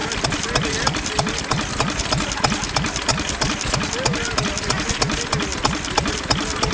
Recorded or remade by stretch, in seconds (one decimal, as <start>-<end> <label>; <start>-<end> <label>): 0.0-6.7 recorded